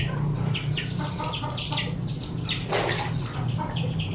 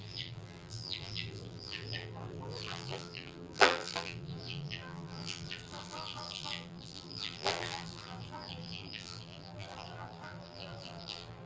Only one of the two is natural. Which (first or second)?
first